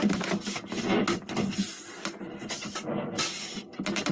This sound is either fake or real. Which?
real